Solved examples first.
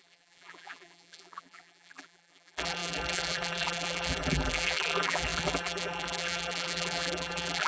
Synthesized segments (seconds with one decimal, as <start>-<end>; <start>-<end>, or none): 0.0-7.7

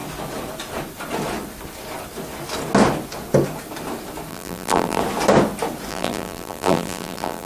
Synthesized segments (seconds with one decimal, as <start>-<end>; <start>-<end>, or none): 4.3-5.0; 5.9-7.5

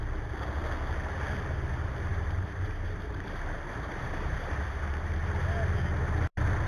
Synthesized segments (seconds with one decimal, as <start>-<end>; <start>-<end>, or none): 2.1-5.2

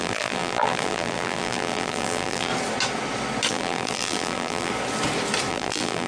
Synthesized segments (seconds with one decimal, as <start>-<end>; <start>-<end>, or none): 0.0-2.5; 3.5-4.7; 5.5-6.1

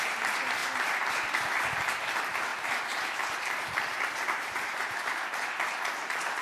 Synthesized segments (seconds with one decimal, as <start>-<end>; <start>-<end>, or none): 2.5-4.8

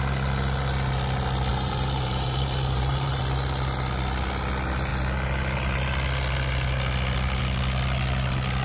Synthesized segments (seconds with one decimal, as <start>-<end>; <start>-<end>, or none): 1.5-3.2